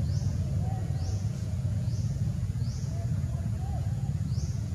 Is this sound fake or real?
fake